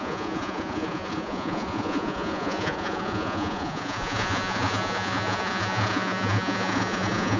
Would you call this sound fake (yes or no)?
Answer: yes